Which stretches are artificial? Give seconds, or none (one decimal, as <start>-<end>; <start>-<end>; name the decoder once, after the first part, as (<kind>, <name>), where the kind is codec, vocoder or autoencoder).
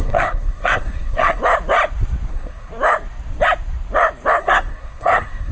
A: 0.0-1.4 (codec, SNAC); 2.3-2.7; 4.4-5.5